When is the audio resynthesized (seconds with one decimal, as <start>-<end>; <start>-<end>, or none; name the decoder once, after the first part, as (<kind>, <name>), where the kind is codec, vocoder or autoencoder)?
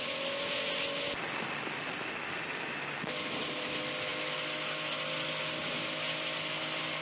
none